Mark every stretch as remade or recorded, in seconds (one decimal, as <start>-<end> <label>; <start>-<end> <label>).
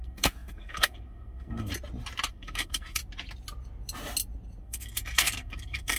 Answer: 0.0-1.7 remade; 1.7-2.3 recorded; 2.3-3.0 remade; 3.0-4.6 recorded; 4.6-6.0 remade